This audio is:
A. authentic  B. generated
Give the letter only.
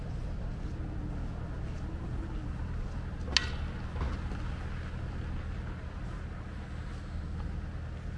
A